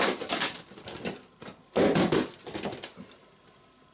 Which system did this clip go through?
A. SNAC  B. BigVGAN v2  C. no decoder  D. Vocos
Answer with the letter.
C